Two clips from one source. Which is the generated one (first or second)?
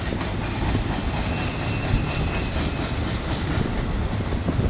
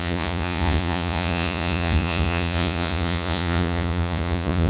second